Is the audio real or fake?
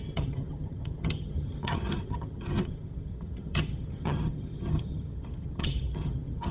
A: fake